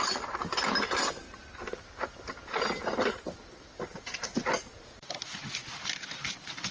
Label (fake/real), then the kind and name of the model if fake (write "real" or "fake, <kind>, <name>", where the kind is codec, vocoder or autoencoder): real